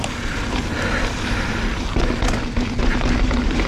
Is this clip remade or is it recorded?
recorded